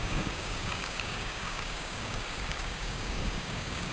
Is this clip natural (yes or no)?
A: no